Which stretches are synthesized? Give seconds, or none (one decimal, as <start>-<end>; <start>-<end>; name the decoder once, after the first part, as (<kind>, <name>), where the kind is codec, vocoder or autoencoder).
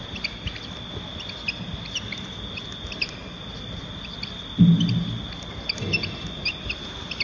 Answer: none